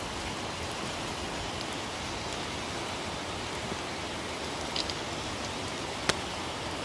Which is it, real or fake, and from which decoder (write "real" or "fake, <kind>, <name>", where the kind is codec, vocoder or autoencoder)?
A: real